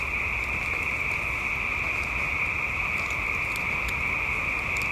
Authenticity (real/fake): real